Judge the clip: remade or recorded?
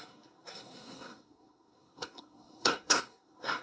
remade